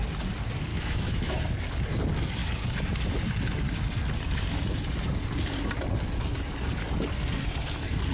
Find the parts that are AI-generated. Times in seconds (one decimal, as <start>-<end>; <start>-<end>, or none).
0.7-1.3